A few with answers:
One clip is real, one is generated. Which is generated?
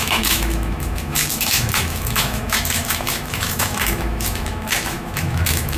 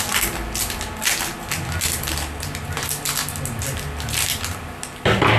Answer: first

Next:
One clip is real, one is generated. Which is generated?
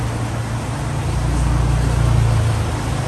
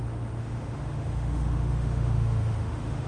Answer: second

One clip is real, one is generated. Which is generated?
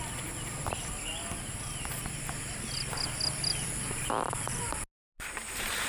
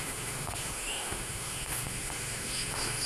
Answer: second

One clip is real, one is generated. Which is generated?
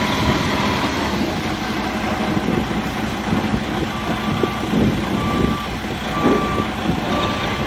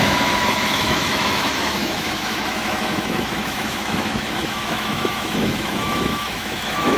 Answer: second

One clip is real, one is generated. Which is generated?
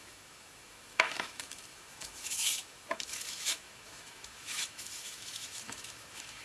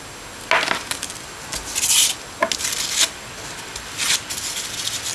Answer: first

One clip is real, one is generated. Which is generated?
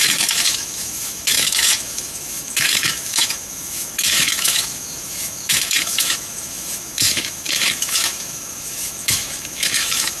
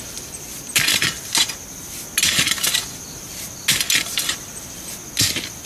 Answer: first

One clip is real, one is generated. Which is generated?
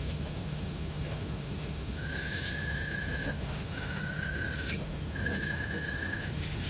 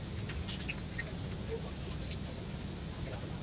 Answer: first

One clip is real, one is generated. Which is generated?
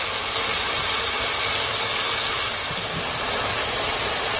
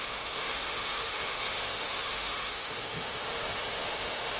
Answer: second